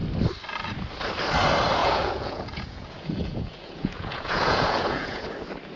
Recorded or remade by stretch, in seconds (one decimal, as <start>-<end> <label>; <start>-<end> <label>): 0.0-1.8 recorded; 1.8-5.3 remade; 5.3-5.8 recorded